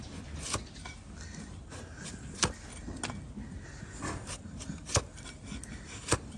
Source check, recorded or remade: recorded